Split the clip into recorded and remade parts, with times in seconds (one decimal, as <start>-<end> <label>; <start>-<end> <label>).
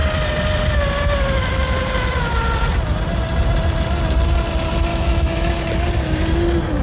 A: 0.0-4.9 recorded; 4.9-5.6 remade; 5.6-6.8 recorded